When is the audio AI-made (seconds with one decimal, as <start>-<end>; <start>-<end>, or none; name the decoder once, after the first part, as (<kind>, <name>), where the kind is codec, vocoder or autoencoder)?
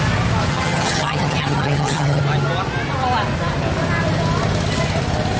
0.5-2.2 (vocoder, HiFi-GAN)